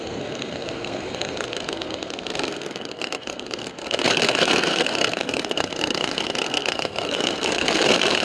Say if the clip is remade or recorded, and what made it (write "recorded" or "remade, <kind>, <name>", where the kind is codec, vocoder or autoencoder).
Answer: remade, codec, SNAC